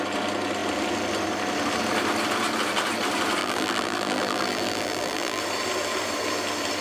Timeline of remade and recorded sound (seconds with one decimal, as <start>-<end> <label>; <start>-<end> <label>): 0.0-3.4 recorded; 3.4-5.4 remade; 5.4-6.8 recorded